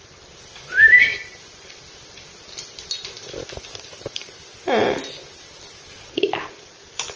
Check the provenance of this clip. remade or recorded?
remade